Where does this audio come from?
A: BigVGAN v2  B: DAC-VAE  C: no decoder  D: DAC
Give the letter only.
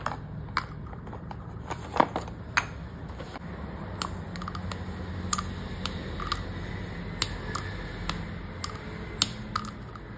C